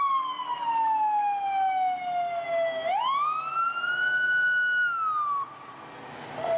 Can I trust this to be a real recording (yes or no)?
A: yes